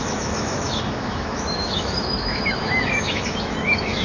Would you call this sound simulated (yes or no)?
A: yes